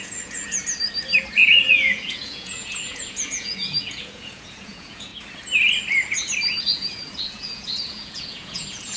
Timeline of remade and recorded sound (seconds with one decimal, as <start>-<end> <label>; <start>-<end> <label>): 0.0-0.6 remade; 0.6-1.3 recorded; 1.3-5.1 remade; 5.1-6.6 recorded; 6.6-9.0 remade